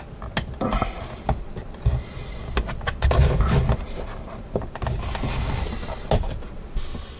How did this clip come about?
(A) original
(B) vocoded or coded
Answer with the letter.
A